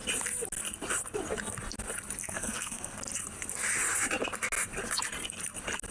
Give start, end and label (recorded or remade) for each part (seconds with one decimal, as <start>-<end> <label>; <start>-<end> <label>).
0.0-2.2 recorded; 2.2-3.0 remade; 3.0-5.9 recorded